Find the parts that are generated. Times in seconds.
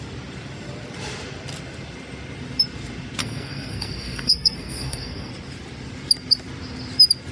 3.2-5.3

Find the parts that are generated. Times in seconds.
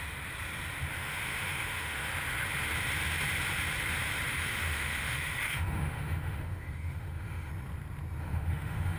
1.0-2.1; 4.3-7.5; 8.2-9.0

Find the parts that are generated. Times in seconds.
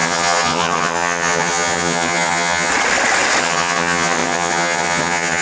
0.0-2.7; 3.4-5.4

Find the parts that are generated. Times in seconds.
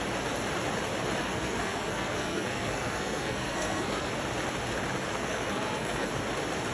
1.2-4.1; 5.1-6.1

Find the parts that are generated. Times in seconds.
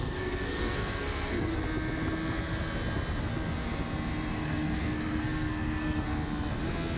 0.0-1.5; 4.3-6.1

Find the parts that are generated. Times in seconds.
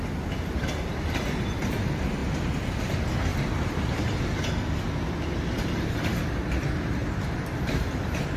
3.3-4.5; 7.0-8.4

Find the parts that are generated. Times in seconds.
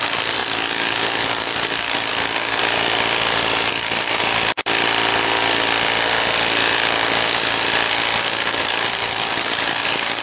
0.0-2.6; 3.7-4.2; 8.2-10.2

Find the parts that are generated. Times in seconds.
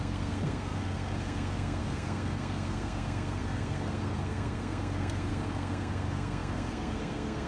0.0-7.5